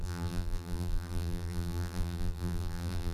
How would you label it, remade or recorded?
remade